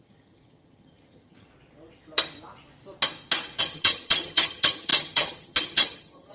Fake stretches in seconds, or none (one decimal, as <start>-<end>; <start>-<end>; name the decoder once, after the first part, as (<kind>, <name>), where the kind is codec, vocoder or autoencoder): 0.0-1.5 (vocoder, HiFi-GAN); 3.6-6.3